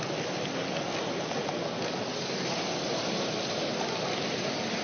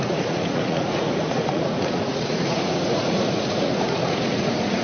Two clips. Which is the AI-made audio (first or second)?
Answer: second